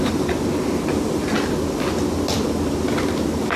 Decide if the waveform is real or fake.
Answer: real